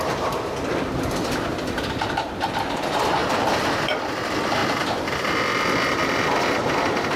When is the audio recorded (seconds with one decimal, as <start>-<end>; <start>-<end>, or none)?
0.0-7.2